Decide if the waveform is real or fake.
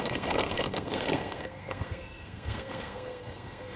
fake